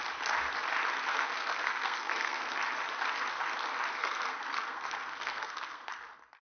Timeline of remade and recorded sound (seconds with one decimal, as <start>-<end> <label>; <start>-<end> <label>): 0.0-1.1 recorded; 1.1-2.5 remade; 2.5-4.0 recorded; 4.0-5.9 remade; 5.9-6.5 recorded